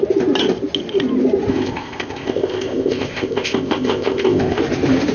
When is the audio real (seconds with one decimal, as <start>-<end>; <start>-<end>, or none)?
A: 0.0-1.5; 4.6-5.1